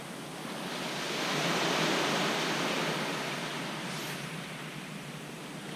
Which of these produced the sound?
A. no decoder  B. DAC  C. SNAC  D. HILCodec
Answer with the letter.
A